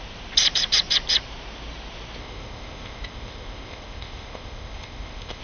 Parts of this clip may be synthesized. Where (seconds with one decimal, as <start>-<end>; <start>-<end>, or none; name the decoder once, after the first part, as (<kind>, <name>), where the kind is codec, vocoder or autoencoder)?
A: 2.2-5.4 (codec, ZipCodec)